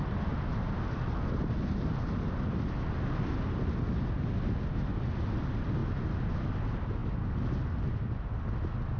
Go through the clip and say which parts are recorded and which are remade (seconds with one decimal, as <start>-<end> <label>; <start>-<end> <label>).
0.0-9.0 recorded